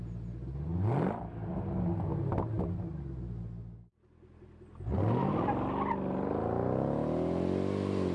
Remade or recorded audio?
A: recorded